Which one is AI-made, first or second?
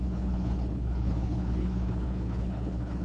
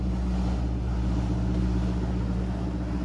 first